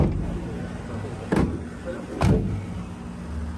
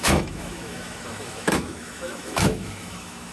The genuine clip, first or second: first